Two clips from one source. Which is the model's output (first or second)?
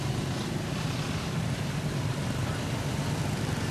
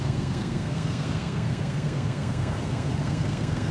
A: second